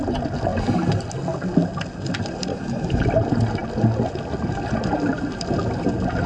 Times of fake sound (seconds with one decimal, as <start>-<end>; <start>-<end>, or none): 2.5-3.0